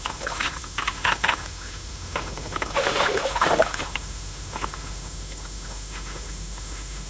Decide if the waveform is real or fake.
fake